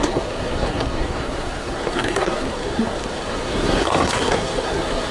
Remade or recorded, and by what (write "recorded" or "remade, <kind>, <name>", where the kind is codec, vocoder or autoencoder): remade, codec, SNAC